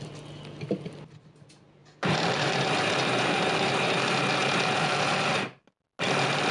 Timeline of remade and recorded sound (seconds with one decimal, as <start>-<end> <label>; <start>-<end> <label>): 0.0-6.5 recorded